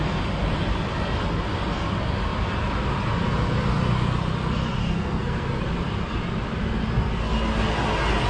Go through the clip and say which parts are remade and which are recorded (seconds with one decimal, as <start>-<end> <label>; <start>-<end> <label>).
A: 0.0-4.8 recorded; 4.8-5.6 remade; 5.6-8.3 recorded